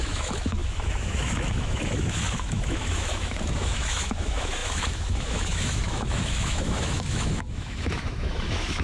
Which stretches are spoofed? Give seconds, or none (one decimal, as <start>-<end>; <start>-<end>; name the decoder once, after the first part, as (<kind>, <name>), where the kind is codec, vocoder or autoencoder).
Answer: 0.0-8.8 (autoencoder, DAC-VAE)